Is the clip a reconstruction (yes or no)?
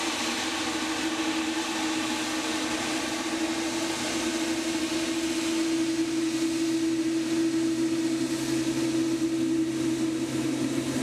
no